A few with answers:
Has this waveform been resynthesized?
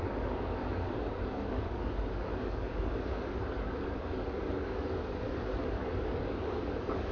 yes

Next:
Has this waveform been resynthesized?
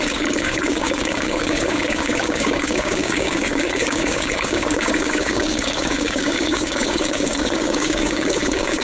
yes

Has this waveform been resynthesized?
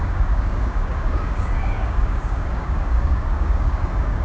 yes